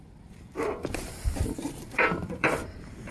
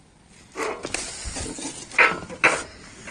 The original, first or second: second